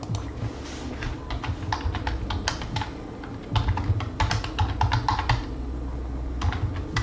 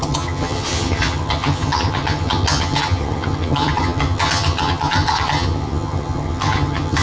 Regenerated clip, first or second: second